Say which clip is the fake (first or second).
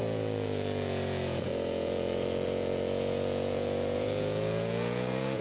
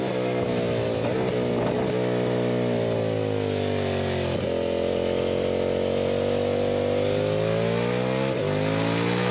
first